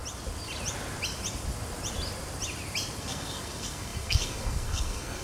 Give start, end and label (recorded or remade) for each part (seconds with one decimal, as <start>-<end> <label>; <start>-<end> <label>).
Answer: 0.0-3.0 recorded; 3.0-5.2 remade